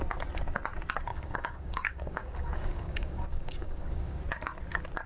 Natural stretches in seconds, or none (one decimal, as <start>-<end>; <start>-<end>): 0.0-1.1; 4.2-5.1